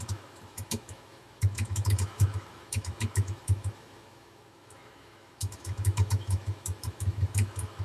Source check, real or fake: fake